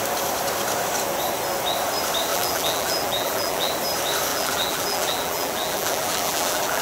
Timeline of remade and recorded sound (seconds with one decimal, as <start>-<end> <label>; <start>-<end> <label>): 0.0-2.3 recorded; 2.3-3.7 remade; 3.7-4.3 recorded; 4.3-6.8 remade